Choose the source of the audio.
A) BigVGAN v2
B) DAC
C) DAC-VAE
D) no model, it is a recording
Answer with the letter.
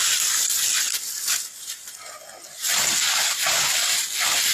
D